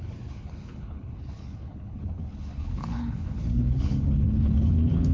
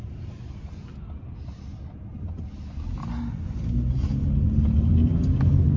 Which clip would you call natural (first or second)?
second